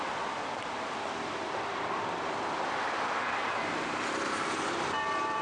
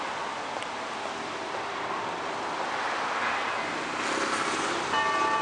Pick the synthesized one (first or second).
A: first